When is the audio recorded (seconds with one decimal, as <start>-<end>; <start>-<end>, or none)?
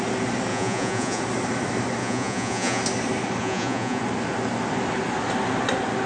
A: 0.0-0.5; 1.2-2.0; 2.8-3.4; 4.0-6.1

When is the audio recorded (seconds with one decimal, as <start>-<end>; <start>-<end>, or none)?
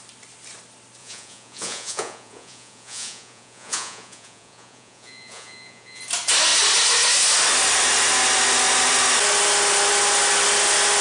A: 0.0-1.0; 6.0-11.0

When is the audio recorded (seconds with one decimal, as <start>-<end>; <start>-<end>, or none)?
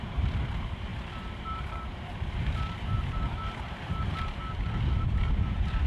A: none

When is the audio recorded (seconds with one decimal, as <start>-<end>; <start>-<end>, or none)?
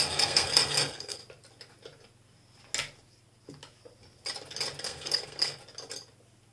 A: 1.2-4.8; 5.6-6.5